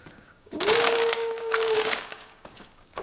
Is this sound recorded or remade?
remade